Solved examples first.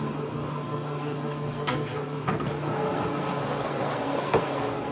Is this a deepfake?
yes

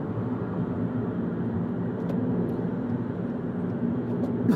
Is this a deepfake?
no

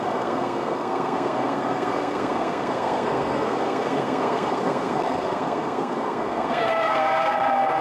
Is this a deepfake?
yes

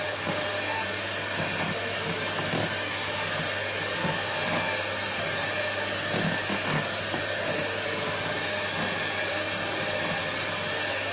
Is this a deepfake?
no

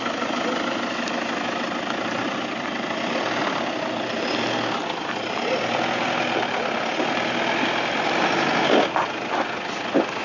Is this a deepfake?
no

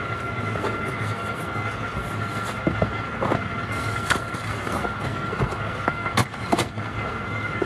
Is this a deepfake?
yes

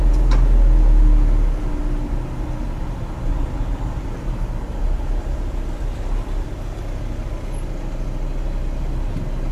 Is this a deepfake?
no